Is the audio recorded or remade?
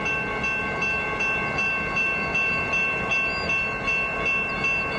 recorded